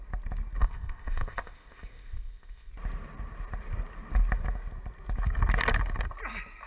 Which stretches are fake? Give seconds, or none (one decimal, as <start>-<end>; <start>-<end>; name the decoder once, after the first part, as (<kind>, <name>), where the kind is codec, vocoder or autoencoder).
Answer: 0.6-2.7 (codec, ZipCodec)